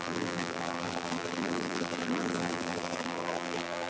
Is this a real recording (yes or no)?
no